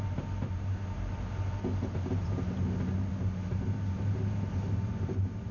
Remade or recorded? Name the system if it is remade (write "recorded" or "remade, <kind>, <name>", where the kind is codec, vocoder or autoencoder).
recorded